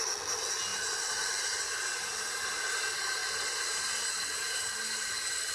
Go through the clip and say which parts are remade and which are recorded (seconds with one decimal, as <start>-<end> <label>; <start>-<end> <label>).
0.0-5.5 recorded